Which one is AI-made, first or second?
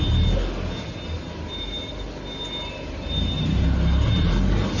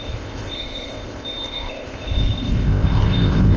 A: second